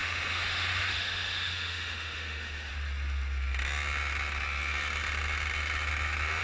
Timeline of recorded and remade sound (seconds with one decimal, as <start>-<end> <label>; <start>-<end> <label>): 0.0-2.7 remade; 2.7-6.4 recorded